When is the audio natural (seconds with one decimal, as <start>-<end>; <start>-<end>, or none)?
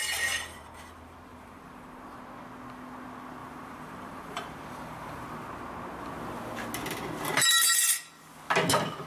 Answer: 0.8-1.3; 2.2-3.4; 5.2-9.1